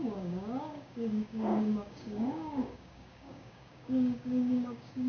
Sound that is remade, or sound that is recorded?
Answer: remade